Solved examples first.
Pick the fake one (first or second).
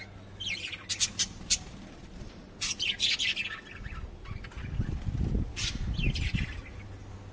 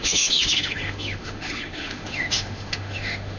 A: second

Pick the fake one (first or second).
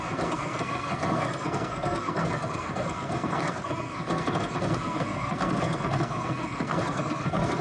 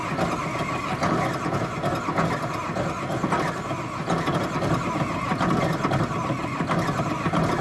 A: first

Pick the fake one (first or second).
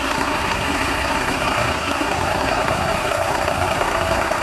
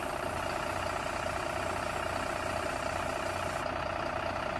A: first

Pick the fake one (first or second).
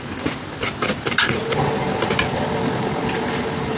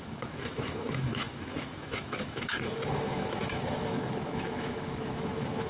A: second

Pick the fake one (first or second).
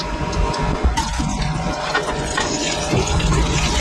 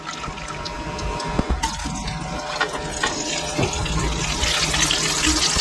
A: first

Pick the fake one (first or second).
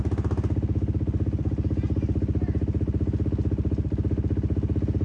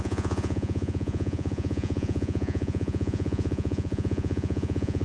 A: second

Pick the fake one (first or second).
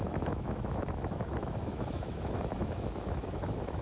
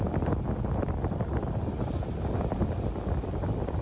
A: first